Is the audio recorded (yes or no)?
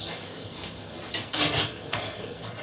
no